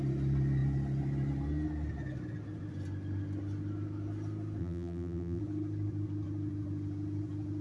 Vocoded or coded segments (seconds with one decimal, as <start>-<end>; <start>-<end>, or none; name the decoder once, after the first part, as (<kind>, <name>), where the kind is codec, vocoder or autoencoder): 4.6-5.4 (vocoder, BigVGAN v2)